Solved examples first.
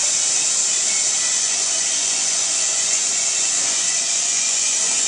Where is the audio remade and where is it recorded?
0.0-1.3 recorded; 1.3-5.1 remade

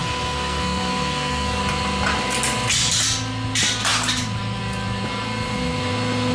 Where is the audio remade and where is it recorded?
0.0-1.6 remade; 1.6-6.3 recorded

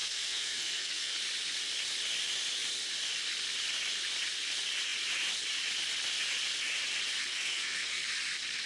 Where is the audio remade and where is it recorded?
0.0-1.2 remade; 1.2-7.3 recorded; 7.3-8.1 remade; 8.1-8.7 recorded

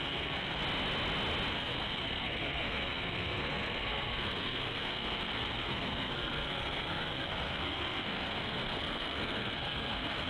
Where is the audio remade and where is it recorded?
0.0-0.6 remade; 0.6-1.5 recorded; 1.5-10.3 remade

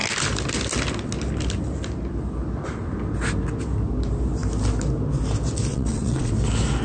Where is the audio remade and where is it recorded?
0.0-5.7 recorded; 5.7-6.3 remade; 6.3-6.8 recorded

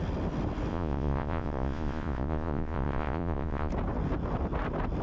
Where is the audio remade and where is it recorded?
0.0-0.7 recorded; 0.7-3.7 remade; 3.7-5.0 recorded

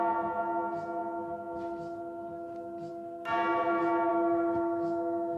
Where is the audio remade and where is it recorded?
0.0-4.1 recorded; 4.1-5.4 remade

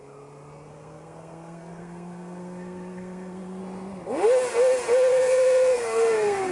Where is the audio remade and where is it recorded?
0.0-0.7 recorded; 0.7-3.6 remade; 3.6-5.1 recorded; 5.1-6.5 remade